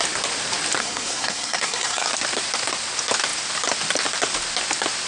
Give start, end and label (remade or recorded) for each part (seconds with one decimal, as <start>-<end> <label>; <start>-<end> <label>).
0.0-0.8 recorded; 0.8-2.1 remade; 2.1-5.1 recorded